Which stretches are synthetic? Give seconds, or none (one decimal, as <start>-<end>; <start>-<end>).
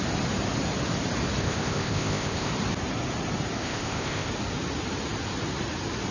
1.4-2.5; 3.6-4.3